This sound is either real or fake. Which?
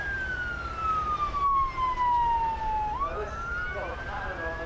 real